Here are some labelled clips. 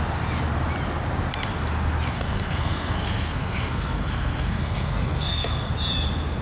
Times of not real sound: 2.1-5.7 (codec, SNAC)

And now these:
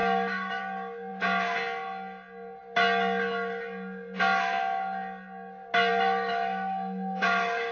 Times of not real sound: 0.0-0.6 (autoencoder, DAC-VAE); 5.9-7.7

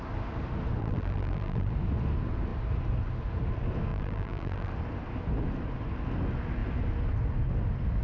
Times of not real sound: 0.8-1.7 (vocoder, BigVGAN v2); 3.9-4.7

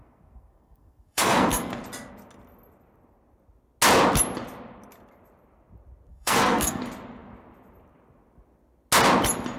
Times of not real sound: 0.0-1.8 (codec, SNAC); 6.1-6.8